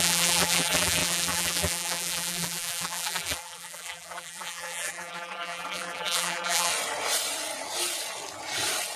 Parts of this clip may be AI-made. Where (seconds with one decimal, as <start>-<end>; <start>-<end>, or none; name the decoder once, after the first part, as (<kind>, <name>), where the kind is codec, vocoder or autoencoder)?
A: 0.0-6.7 (vocoder, BigVGAN v2)